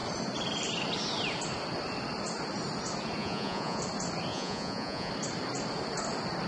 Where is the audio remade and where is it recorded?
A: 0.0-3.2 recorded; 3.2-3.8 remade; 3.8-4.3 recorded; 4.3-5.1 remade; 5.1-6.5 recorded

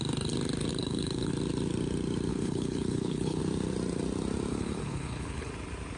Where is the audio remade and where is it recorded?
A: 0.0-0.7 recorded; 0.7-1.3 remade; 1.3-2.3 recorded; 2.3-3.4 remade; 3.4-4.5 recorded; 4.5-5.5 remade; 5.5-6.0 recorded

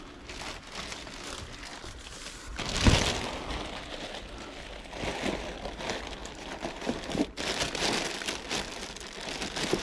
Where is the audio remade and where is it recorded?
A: 0.0-9.8 recorded

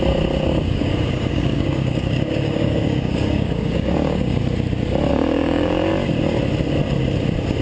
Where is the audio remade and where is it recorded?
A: 0.0-0.5 recorded; 0.5-4.4 remade; 4.4-5.1 recorded; 5.1-5.9 remade; 5.9-7.6 recorded

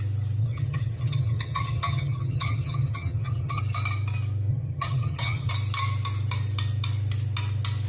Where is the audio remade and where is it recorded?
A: 0.0-0.4 recorded; 0.4-3.6 remade; 3.6-4.5 recorded; 4.5-5.5 remade; 5.5-7.9 recorded

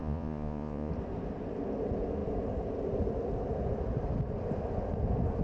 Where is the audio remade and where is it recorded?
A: 0.0-0.9 remade; 0.9-5.4 recorded

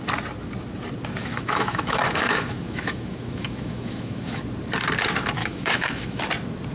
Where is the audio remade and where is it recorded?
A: 0.0-1.2 recorded; 1.2-4.4 remade; 4.4-5.4 recorded; 5.4-6.2 remade; 6.2-6.7 recorded

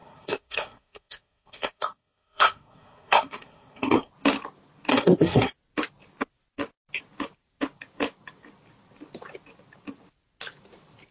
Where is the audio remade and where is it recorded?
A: 0.0-4.1 remade; 4.1-4.9 recorded; 4.9-5.5 remade; 5.5-11.1 recorded